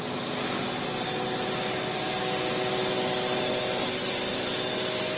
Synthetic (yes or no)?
no